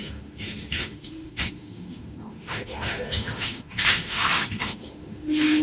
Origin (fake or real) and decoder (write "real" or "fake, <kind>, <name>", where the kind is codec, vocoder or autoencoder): fake, autoencoder, DAC-VAE